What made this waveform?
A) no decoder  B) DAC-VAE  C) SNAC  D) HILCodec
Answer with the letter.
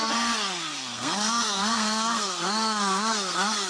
C